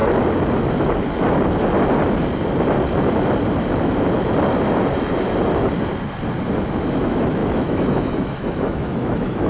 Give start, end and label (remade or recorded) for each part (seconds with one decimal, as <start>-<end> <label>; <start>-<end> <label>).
0.0-7.4 recorded; 7.4-9.5 remade